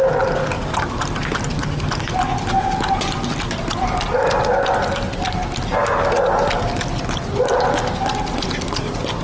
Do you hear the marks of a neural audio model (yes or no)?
no